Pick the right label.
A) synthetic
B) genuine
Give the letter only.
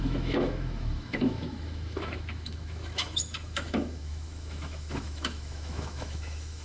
A